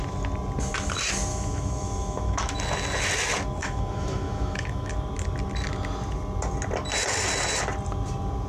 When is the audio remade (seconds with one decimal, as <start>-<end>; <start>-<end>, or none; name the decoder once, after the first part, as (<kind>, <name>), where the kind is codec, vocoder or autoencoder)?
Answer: 1.3-2.6 (autoencoder, DAC-VAE); 3.6-4.9